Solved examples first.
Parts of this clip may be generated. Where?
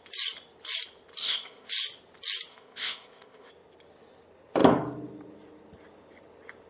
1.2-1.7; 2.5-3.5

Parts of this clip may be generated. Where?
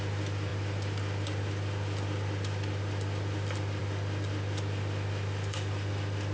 none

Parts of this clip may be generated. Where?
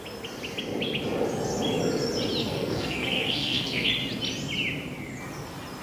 2.4-3.9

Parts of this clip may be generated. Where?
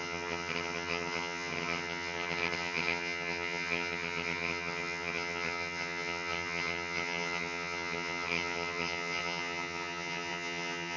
0.0-11.0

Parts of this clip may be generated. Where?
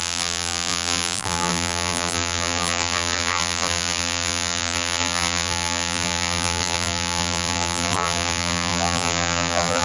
0.0-9.8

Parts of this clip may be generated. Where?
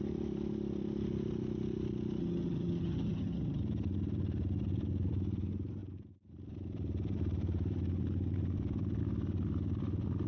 2.2-3.6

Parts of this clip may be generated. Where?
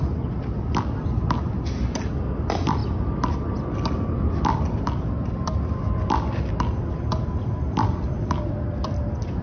none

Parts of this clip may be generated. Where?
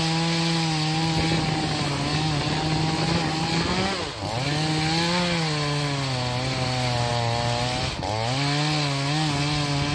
none